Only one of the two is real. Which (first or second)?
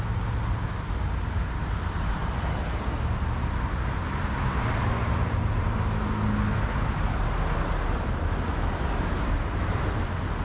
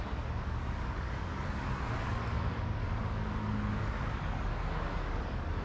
first